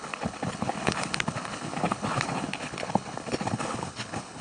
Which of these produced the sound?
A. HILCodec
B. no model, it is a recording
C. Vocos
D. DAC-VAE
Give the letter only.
A